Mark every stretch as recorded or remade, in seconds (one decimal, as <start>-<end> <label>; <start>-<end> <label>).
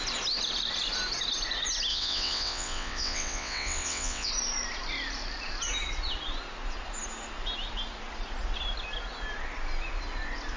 0.0-1.9 recorded; 1.9-4.3 remade; 4.3-10.6 recorded